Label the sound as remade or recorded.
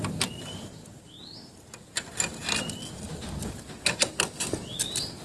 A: recorded